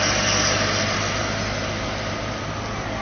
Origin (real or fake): real